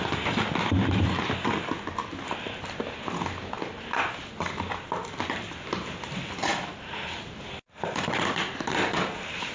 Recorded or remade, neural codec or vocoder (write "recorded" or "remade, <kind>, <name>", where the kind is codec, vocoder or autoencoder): recorded